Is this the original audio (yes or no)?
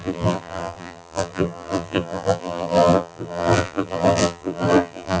no